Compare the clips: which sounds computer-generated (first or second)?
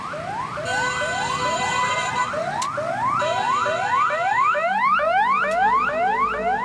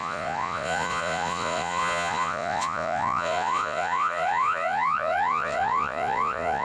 second